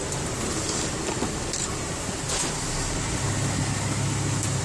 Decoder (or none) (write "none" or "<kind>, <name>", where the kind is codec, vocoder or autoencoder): none